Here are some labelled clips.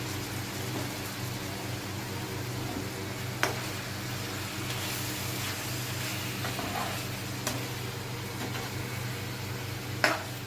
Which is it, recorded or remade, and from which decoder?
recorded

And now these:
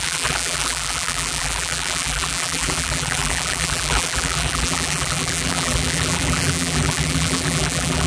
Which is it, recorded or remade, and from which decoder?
remade, vocoder, BigVGAN v2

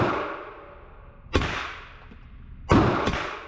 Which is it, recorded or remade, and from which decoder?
recorded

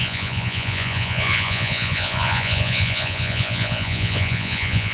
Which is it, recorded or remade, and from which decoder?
remade, vocoder, Vocos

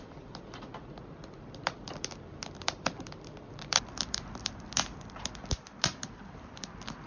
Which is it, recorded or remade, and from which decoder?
remade, vocoder, BigVGAN v2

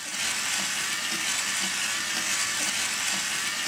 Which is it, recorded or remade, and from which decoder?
recorded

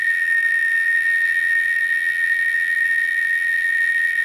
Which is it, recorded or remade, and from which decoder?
remade, vocoder, BigVGAN v2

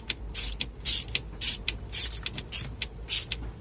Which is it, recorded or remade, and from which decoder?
recorded